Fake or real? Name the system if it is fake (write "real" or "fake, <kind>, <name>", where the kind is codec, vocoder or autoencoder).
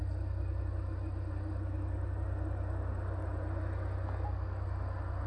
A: real